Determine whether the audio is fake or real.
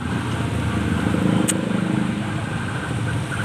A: real